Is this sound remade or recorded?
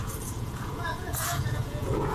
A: remade